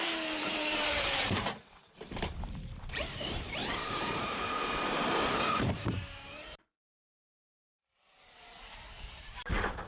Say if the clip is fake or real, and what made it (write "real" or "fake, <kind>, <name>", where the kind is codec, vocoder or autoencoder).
fake, vocoder, BigVGAN v2